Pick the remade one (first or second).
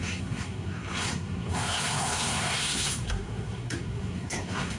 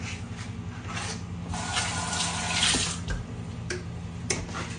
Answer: first